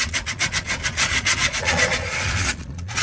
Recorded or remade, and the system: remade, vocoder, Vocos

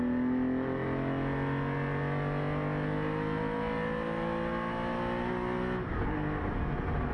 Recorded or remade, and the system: recorded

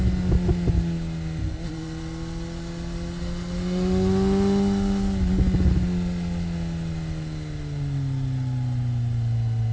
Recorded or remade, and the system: recorded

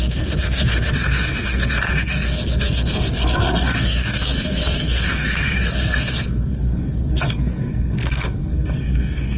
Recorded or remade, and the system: remade, codec, SNAC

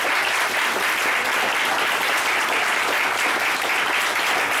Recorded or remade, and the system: recorded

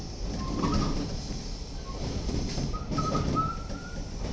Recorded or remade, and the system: recorded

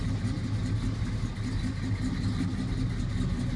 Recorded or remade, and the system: recorded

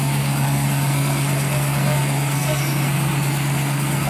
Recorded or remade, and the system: remade, codec, SNAC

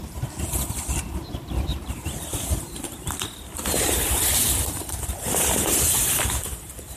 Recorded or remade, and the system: remade, vocoder, BigVGAN v2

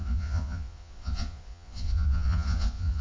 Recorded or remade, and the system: remade, vocoder, Vocos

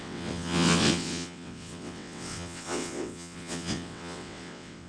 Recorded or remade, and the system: remade, vocoder, WaveNeXt